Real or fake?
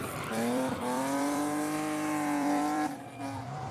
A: fake